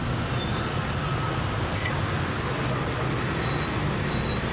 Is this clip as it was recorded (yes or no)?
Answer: yes